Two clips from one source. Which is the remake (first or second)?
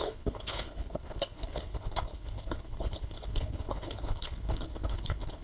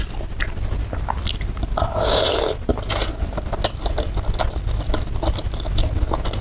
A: first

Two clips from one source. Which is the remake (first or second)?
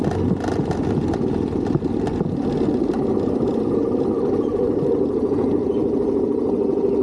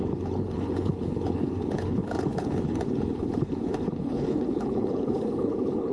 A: second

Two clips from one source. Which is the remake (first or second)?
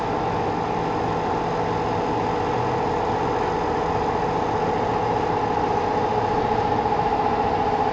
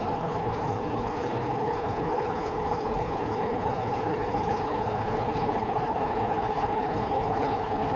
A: second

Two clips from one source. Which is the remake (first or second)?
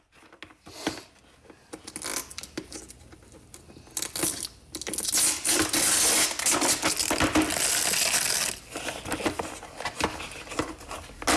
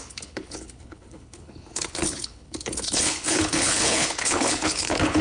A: second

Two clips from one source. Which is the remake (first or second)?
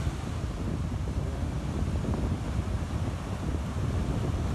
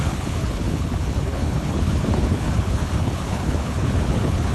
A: second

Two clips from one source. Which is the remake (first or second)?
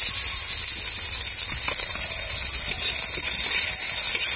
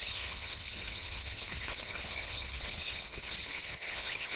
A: second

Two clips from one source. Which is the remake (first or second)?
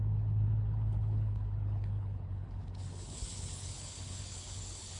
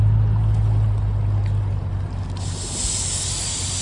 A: first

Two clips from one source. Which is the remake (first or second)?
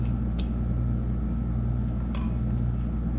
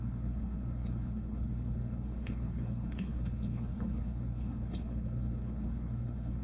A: second